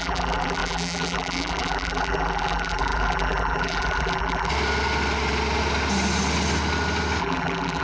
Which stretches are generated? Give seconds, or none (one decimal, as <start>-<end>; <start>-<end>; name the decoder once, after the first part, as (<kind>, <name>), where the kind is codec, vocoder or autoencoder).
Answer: 0.0-4.5 (vocoder, BigVGAN v2); 7.2-7.8